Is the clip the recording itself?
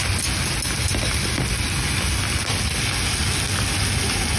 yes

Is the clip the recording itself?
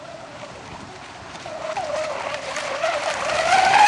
no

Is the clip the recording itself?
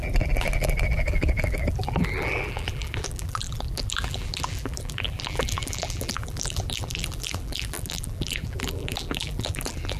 no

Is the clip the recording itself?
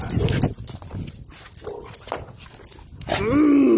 yes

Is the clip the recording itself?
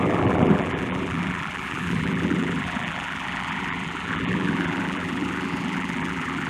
no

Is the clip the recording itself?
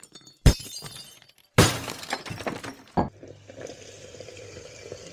no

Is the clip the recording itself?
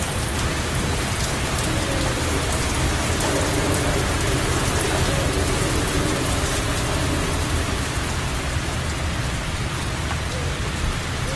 yes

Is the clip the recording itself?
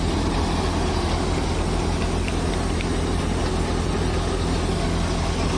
yes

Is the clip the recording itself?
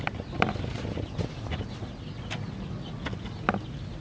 yes